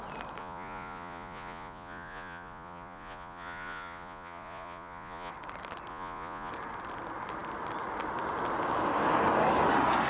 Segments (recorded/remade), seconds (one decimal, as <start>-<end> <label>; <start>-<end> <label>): 0.0-0.4 recorded; 0.4-5.3 remade; 5.3-5.9 recorded; 5.9-6.5 remade; 6.5-10.1 recorded